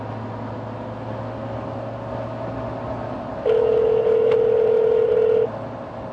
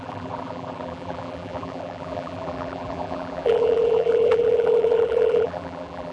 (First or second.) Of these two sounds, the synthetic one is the second